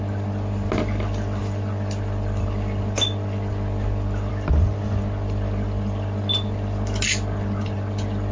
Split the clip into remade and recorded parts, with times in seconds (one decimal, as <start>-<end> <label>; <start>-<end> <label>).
0.0-8.3 recorded

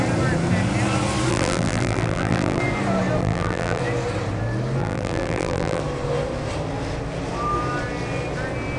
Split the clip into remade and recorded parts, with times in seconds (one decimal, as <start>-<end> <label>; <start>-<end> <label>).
0.0-1.3 recorded; 1.3-2.6 remade; 2.6-3.2 recorded; 3.2-3.8 remade; 3.8-4.8 recorded; 4.8-5.8 remade; 5.8-8.8 recorded

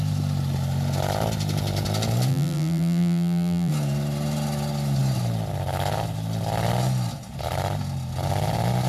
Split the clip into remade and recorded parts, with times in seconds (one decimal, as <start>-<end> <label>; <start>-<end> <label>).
0.0-2.3 recorded; 2.3-3.7 remade; 3.7-8.9 recorded